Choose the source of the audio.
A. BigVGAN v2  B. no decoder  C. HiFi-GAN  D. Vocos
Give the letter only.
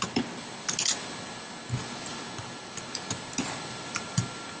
B